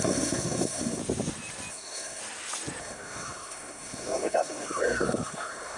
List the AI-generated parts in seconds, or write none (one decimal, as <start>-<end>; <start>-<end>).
0.0-1.0; 1.7-2.2; 2.8-5.8